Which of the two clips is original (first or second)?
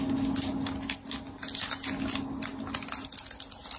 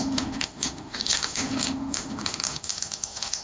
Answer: first